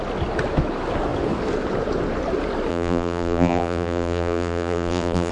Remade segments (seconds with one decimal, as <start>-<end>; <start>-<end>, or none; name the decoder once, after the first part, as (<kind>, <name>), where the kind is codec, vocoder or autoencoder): 2.7-5.3 (vocoder, BigVGAN v2)